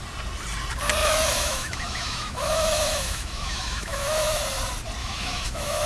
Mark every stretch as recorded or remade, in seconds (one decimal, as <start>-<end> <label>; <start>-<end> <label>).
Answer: 0.0-1.0 recorded; 1.0-4.4 remade; 4.4-5.0 recorded; 5.0-5.9 remade